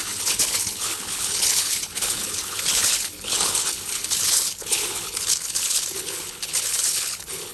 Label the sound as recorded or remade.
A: remade